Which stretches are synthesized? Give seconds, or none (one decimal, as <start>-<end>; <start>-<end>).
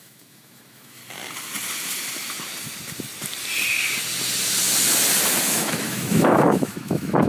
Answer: 0.0-1.0; 5.4-7.3